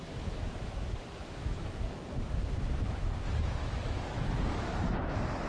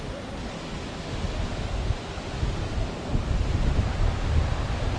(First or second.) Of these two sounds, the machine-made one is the first